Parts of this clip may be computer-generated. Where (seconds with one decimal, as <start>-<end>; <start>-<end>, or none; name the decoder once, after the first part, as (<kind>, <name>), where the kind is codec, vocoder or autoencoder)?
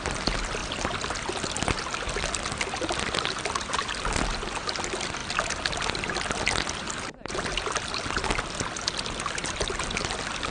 0.6-1.3 (vocoder, BigVGAN v2); 9.4-10.0